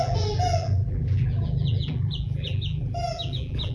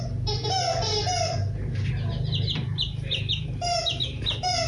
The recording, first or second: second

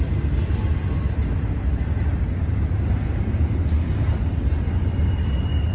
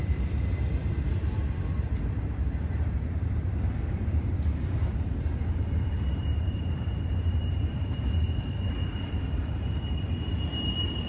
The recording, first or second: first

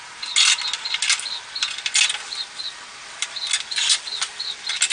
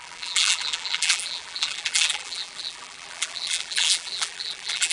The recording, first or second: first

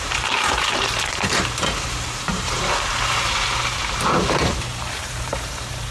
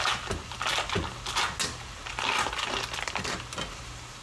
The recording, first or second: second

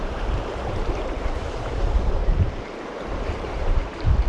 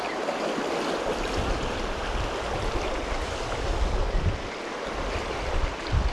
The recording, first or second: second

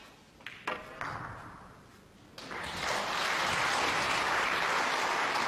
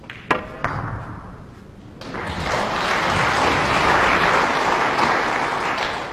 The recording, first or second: second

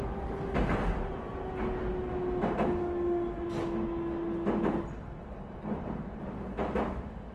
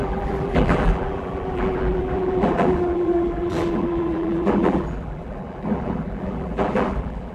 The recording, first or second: first